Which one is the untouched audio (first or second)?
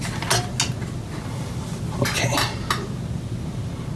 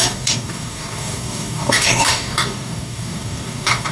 first